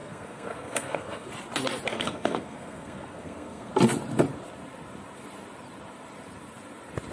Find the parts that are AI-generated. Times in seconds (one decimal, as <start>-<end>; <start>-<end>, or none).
0.0-1.3; 1.9-3.7